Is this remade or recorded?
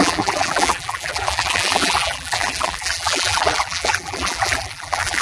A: remade